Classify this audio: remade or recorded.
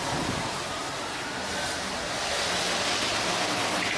recorded